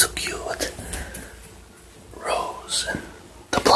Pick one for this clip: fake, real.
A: real